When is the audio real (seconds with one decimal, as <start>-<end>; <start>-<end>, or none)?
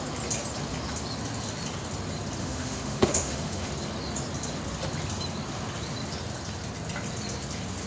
0.0-2.4; 3.7-7.9